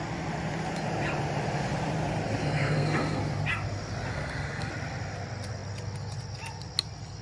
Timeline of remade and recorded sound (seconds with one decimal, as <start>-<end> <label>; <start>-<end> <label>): 0.0-2.4 recorded; 2.4-3.2 remade; 3.2-4.1 recorded; 4.1-4.7 remade; 4.7-7.2 recorded